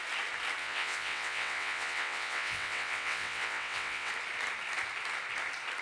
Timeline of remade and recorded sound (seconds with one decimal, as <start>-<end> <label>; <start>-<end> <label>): 0.0-0.6 recorded; 0.6-4.1 remade; 4.1-5.8 recorded